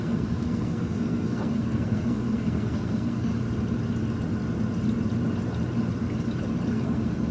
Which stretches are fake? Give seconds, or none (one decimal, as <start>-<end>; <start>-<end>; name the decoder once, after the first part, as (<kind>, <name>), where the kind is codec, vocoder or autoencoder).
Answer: 0.0-3.3 (codec, SNAC); 6.7-7.3